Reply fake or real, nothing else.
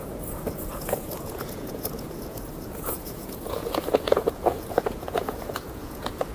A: fake